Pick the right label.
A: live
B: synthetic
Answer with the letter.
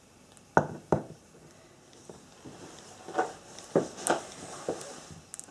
A